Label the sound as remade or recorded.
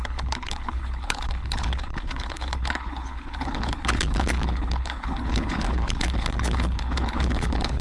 remade